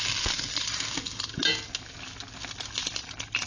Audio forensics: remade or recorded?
recorded